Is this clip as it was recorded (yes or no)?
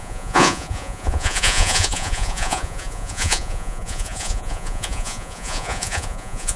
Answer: no